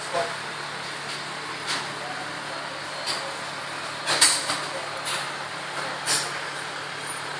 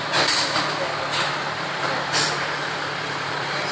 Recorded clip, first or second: first